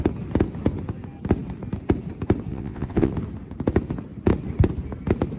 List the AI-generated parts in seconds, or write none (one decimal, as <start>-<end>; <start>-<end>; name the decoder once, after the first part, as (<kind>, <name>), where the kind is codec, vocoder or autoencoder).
2.5-3.1 (vocoder, WaveNeXt)